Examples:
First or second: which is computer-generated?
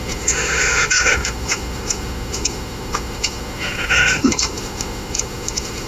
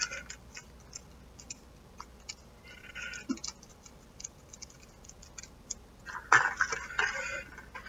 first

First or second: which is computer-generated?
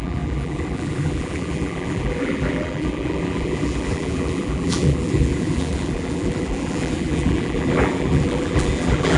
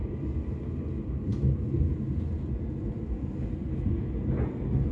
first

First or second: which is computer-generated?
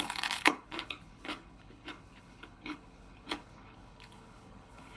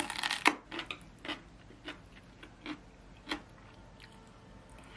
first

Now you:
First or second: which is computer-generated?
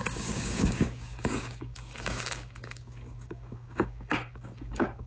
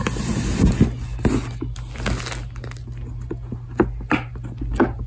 first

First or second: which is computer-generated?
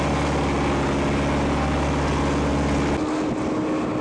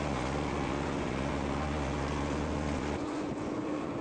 second